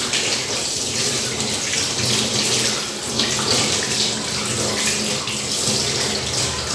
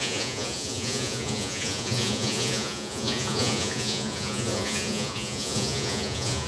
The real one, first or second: first